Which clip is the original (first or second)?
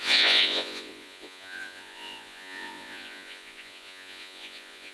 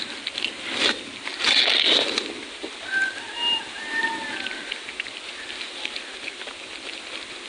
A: second